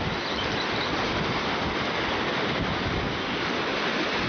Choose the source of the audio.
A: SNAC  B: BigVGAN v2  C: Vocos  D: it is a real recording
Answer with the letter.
D